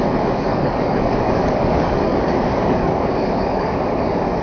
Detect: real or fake fake